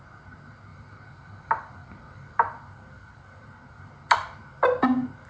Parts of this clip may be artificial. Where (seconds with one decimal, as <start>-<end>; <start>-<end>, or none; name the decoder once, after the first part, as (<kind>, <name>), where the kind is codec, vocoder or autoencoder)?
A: 0.7-3.9 (vocoder, BigVGAN v2)